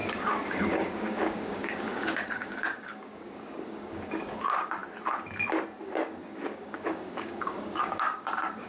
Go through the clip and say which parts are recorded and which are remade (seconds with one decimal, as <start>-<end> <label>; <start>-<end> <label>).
0.0-4.8 remade; 4.8-5.8 recorded; 5.8-8.7 remade